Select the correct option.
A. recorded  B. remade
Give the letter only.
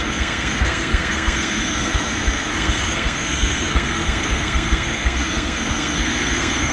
B